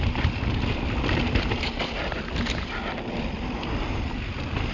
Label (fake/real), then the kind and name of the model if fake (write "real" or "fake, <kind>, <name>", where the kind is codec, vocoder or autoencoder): real